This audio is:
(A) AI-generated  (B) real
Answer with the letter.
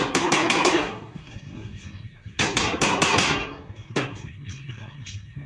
A